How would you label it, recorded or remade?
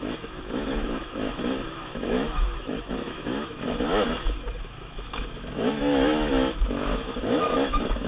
remade